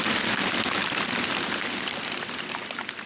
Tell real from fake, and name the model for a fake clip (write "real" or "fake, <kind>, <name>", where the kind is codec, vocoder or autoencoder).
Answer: real